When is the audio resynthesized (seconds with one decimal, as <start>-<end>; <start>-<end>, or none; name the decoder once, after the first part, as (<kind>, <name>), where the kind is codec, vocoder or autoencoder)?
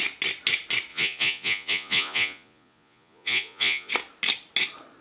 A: 0.9-3.9 (vocoder, Vocos)